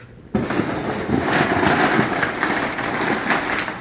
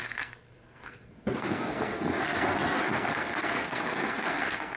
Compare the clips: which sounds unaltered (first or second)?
first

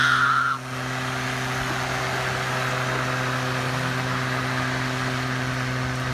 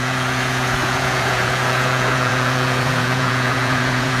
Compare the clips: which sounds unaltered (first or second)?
first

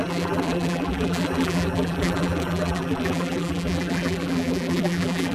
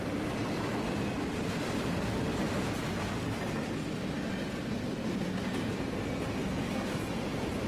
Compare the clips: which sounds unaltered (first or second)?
second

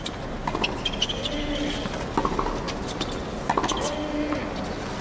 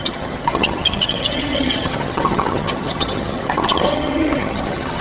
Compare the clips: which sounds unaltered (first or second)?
first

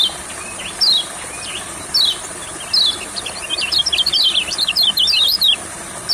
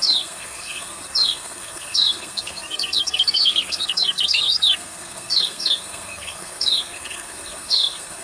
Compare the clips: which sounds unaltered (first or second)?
first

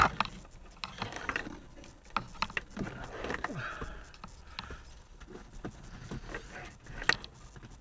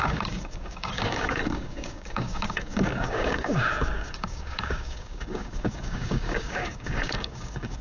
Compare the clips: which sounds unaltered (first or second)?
first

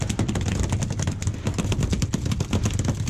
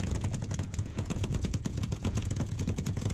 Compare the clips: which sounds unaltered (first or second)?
first